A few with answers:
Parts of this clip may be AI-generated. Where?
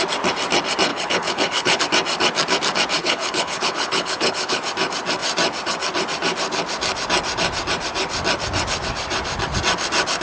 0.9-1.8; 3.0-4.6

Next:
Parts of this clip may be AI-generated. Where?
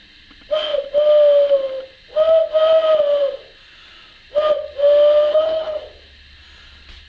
5.3-5.8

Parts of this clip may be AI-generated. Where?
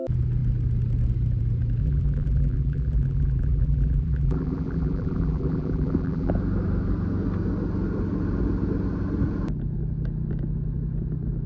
1.8-6.3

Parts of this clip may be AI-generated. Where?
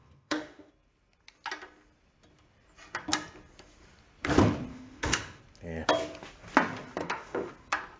0.0-0.7; 4.7-5.4; 7.0-7.5